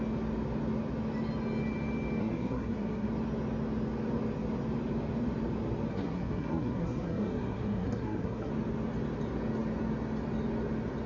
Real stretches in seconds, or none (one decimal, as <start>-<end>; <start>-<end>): 0.0-2.2; 3.1-5.9; 8.5-11.1

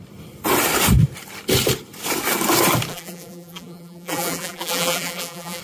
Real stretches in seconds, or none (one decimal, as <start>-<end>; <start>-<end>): 0.0-2.9

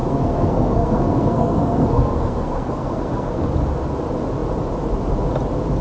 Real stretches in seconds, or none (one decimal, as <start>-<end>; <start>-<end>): 3.5-5.8

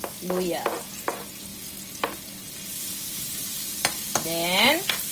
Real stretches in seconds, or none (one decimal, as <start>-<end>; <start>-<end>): 0.0-1.5; 4.1-5.1